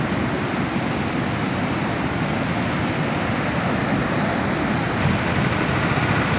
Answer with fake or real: real